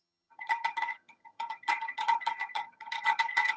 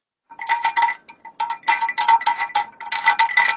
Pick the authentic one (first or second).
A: second